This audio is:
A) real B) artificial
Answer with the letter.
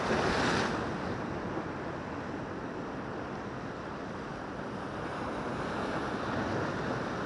A